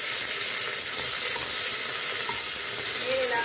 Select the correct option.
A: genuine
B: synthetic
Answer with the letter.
A